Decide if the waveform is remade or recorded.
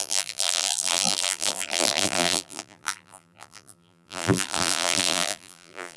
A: remade